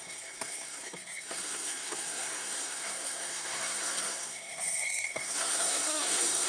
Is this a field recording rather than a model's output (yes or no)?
no